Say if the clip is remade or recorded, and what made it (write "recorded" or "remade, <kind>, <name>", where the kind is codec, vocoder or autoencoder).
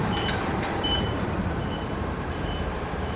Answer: remade, vocoder, BigVGAN v2